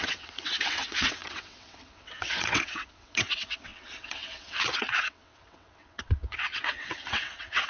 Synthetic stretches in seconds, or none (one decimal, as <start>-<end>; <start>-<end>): 0.0-7.7